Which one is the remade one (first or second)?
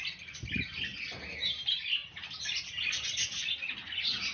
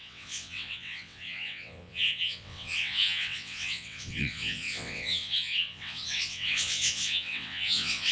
second